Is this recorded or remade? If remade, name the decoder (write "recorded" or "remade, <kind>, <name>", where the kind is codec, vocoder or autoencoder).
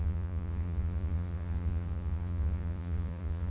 remade, vocoder, Vocos